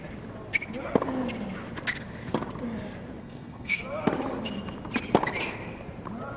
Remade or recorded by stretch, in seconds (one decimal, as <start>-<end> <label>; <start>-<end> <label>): 0.0-3.2 recorded; 3.2-3.8 remade; 3.8-6.4 recorded